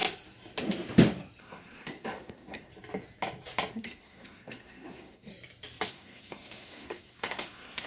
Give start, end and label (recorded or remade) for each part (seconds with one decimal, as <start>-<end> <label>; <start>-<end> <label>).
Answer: 0.0-1.4 recorded; 1.4-2.7 remade; 2.7-3.7 recorded; 3.7-5.3 remade; 5.3-5.9 recorded; 5.9-7.9 remade